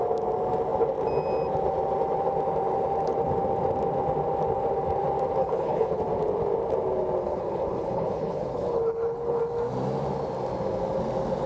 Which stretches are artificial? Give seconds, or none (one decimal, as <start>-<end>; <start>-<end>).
5.4-6.0; 7.2-9.4